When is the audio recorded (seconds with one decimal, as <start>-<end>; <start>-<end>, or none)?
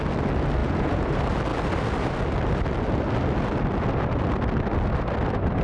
0.0-0.6; 1.1-5.6